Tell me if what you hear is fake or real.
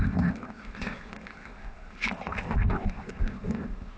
fake